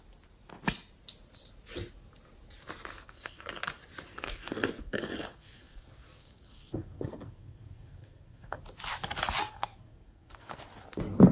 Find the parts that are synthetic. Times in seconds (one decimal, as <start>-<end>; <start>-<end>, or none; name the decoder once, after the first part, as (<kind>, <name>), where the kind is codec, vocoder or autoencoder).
2.9-3.5 (codec, SNAC); 4.1-8.6; 9.5-10.6